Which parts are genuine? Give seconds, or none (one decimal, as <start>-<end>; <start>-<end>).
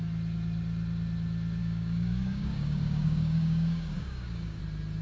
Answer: 0.0-1.6; 4.6-5.0